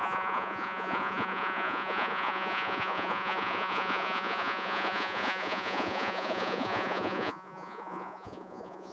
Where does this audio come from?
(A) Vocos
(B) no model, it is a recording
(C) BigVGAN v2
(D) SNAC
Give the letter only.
A